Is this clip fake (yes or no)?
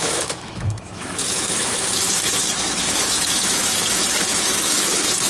yes